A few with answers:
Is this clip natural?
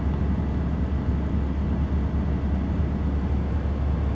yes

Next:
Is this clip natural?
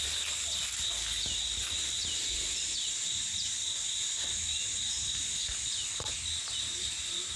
yes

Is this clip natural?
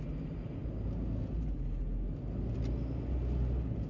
yes